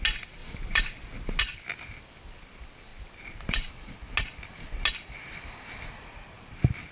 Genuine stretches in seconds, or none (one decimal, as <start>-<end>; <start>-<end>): 0.0-0.4; 1.4-2.9; 3.7-6.9